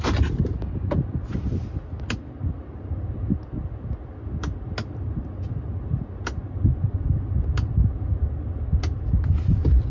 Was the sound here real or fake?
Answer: real